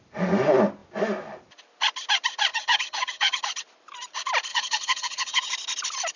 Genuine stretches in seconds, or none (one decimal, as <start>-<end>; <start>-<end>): 0.0-2.5; 3.4-4.5; 5.5-6.2